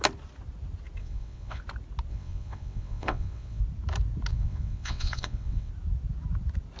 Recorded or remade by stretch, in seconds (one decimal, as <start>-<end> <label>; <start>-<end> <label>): 0.0-1.0 recorded; 1.0-1.6 remade; 1.6-2.1 recorded; 2.1-3.6 remade; 3.6-4.3 recorded; 4.3-5.7 remade; 5.7-6.8 recorded